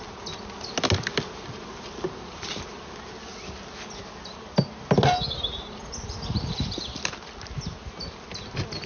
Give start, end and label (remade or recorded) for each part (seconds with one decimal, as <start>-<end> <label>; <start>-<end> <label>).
0.0-8.9 recorded